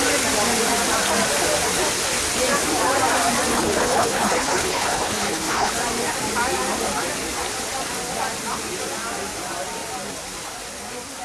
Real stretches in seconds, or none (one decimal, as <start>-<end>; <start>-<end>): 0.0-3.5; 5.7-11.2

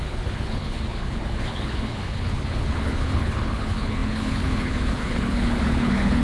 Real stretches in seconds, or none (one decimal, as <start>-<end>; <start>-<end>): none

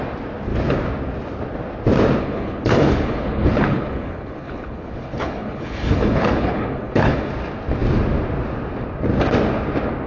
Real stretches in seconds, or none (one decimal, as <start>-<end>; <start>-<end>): 0.0-2.2; 7.3-10.1